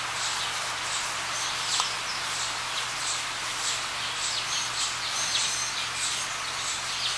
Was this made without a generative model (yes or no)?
yes